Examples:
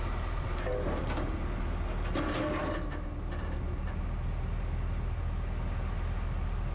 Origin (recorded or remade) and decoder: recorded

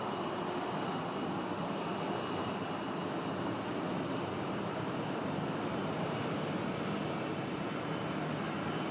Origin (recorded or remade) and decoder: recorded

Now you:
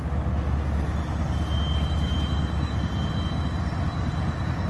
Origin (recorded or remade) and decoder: recorded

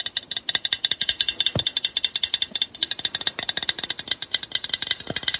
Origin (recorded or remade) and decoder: recorded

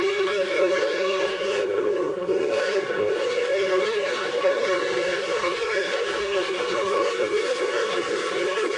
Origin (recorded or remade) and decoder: remade, codec, SNAC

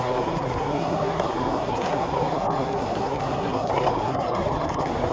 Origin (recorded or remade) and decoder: remade, codec, SNAC